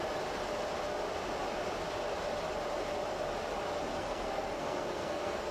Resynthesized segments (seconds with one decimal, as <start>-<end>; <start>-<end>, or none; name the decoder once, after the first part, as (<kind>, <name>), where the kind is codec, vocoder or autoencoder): 3.9-5.5 (codec, SNAC)